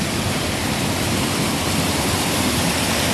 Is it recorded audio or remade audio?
remade